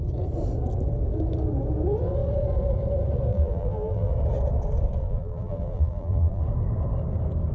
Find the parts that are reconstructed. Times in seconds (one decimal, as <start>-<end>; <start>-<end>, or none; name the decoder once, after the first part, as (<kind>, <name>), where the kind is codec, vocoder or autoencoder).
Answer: 3.3-4.1 (vocoder, BigVGAN v2); 5.0-6.4